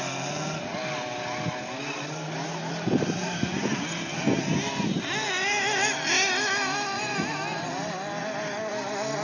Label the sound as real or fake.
real